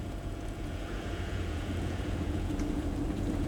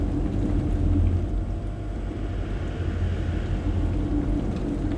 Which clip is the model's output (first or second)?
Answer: first